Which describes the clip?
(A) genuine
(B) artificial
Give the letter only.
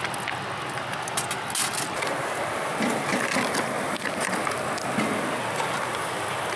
A